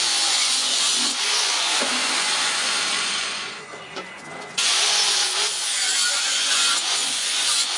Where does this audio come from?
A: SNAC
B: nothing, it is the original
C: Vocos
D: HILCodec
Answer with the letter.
C